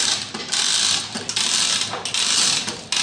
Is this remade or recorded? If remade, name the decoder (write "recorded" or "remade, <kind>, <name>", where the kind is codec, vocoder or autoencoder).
recorded